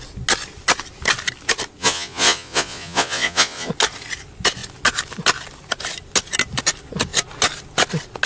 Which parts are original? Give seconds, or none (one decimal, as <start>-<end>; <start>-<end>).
0.0-1.8; 3.7-8.3